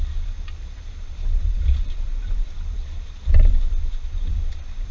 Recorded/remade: remade